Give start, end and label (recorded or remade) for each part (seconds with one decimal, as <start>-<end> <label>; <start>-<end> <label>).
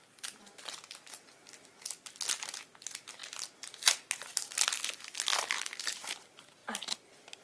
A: 0.0-7.4 recorded